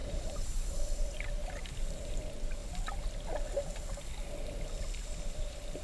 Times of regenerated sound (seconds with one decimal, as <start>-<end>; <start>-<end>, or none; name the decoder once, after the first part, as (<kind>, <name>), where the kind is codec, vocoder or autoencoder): 0.0-1.4 (vocoder, BigVGAN v2); 1.9-2.6; 5.2-5.8